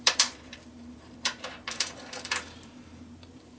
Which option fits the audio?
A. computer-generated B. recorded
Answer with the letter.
A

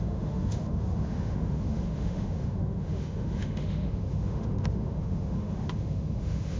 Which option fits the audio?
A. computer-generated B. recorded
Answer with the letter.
A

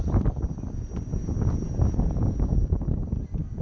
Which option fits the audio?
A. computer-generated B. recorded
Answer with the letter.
B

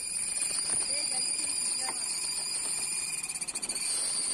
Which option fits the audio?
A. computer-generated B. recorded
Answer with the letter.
B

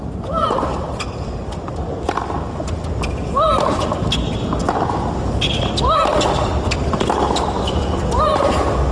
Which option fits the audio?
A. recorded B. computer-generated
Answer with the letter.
A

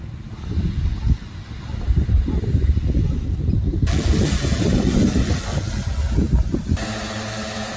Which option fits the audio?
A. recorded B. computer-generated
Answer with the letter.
A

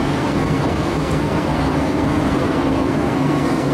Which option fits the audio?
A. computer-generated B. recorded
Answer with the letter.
A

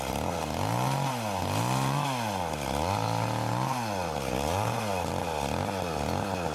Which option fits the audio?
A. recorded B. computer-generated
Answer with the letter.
A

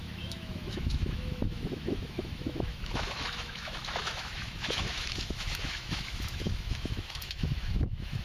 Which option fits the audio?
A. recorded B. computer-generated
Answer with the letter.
B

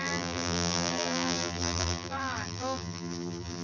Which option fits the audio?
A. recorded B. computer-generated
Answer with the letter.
B